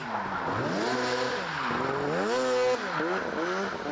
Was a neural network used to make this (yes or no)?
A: no